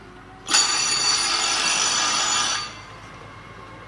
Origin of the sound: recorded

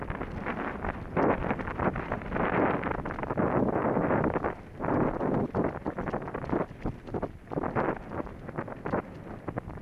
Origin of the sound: recorded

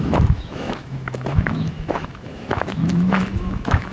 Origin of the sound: remade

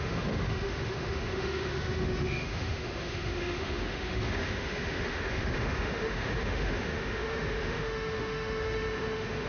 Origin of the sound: remade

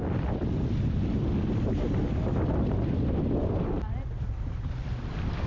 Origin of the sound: recorded